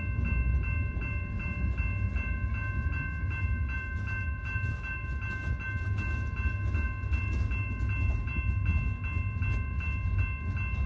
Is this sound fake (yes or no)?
no